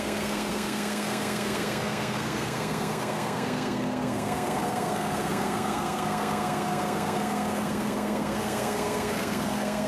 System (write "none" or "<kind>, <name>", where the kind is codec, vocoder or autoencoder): codec, SNAC